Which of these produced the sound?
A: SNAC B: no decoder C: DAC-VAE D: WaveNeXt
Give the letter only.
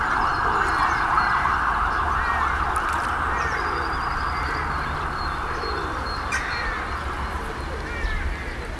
B